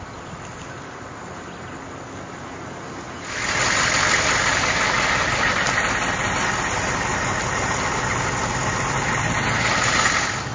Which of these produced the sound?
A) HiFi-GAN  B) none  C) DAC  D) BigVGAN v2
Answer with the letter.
B